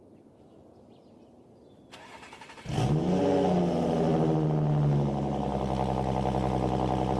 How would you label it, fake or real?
real